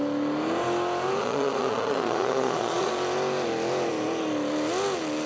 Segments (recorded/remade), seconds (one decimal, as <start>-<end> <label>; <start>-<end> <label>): 0.0-1.2 recorded; 1.2-2.9 remade; 2.9-5.3 recorded